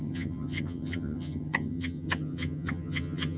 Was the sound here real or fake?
fake